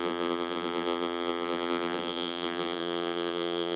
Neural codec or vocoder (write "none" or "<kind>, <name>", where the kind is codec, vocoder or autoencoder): vocoder, BigVGAN v2